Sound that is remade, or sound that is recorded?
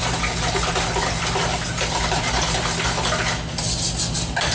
recorded